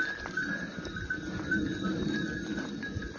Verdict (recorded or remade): recorded